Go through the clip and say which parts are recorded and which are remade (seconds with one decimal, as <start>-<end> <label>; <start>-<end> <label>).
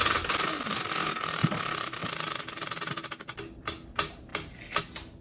0.0-5.2 recorded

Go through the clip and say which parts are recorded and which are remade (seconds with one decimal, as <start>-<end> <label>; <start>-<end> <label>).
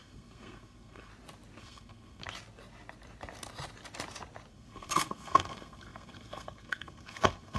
0.0-1.1 remade; 1.1-1.6 recorded; 1.6-2.2 remade; 2.2-4.5 recorded; 4.5-7.6 remade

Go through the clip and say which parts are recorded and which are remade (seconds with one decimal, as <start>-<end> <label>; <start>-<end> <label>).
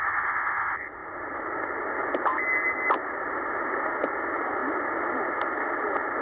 0.0-6.2 recorded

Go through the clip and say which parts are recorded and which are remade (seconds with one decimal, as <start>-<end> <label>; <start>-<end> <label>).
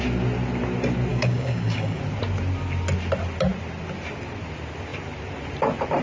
0.0-1.1 recorded; 1.1-2.0 remade; 2.0-6.0 recorded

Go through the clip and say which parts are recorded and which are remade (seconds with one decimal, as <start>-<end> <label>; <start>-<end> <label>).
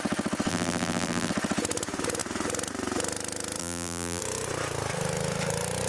0.0-0.5 recorded; 0.5-1.3 remade; 1.3-3.6 recorded; 3.6-4.2 remade; 4.2-5.9 recorded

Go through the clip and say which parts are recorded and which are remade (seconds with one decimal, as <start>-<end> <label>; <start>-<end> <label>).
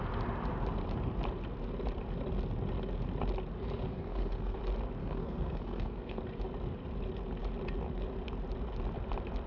0.0-3.9 recorded; 3.9-4.6 remade; 4.6-5.0 recorded; 5.0-6.2 remade; 6.2-9.5 recorded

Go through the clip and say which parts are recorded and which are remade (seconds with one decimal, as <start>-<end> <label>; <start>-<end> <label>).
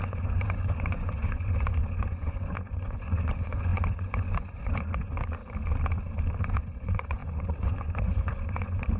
0.0-5.4 remade; 5.4-6.4 recorded; 6.4-9.0 remade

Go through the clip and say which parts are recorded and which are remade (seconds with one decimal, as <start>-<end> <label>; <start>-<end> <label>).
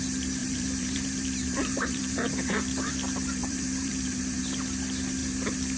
0.0-0.4 recorded; 0.4-2.9 remade; 2.9-3.4 recorded; 3.4-4.4 remade; 4.4-5.8 recorded